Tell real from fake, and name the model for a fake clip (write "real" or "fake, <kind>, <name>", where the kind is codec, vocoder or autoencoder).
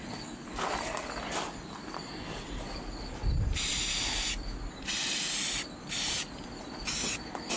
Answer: real